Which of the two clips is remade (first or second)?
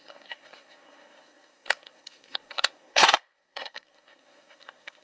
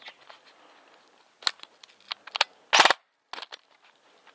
first